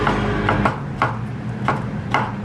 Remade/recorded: recorded